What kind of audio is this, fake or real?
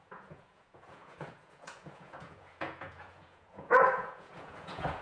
fake